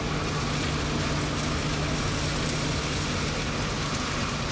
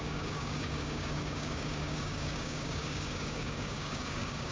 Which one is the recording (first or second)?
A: first